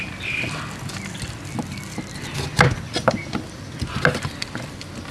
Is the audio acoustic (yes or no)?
yes